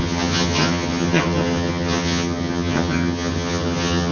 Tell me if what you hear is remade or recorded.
remade